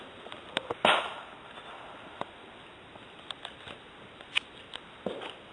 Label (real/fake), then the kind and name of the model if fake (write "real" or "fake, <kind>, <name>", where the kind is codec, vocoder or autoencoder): real